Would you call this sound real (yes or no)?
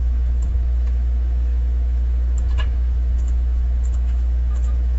no